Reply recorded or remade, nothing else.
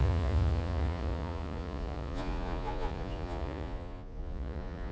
remade